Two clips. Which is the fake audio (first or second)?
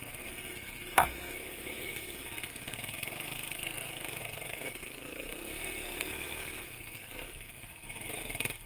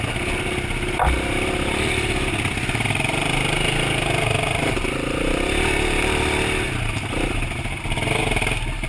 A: first